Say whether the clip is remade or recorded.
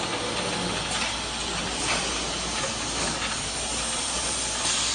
recorded